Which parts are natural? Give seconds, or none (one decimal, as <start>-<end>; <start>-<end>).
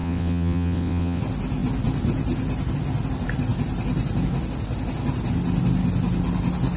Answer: 1.2-6.8